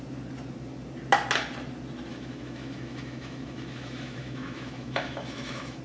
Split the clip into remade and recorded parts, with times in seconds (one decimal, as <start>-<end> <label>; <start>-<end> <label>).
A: 0.0-2.1 recorded; 2.1-5.8 remade